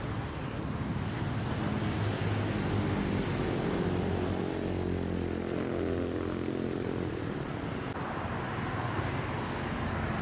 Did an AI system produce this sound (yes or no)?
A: no